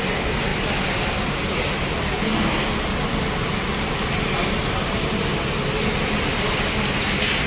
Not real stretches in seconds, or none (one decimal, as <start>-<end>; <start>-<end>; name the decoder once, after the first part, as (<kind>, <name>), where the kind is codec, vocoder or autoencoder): none